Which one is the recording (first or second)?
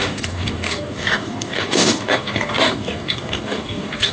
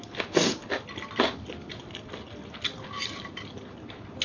second